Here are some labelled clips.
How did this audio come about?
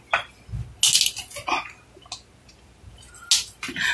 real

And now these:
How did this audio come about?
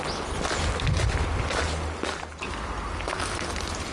real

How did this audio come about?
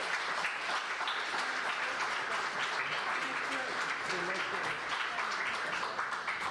real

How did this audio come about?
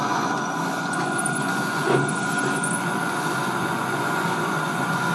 fake